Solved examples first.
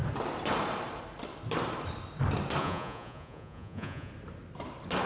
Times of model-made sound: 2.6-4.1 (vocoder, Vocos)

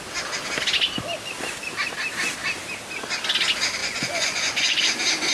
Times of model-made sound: 3.8-4.8 (vocoder, Vocos)

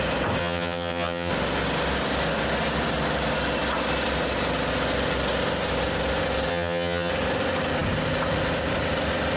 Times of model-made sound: 0.4-1.3 (vocoder, HiFi-GAN); 6.5-7.1

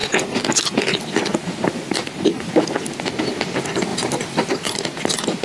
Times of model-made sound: none

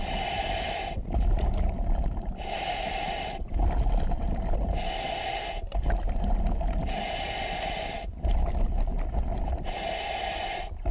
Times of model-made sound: none

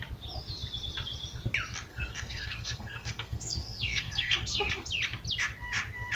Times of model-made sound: 1.9-4.9 (codec, SNAC)